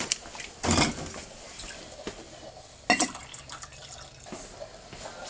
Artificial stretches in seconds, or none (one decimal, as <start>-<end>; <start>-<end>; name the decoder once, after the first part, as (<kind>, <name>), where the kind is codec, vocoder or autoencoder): none